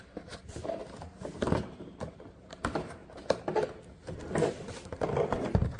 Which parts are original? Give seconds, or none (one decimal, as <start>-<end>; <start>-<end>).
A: 0.8-1.3; 3.0-4.5